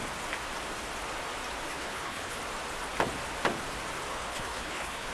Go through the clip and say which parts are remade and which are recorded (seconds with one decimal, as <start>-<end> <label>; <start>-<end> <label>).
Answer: 0.0-1.7 recorded; 1.7-2.4 remade; 2.4-4.1 recorded; 4.1-5.1 remade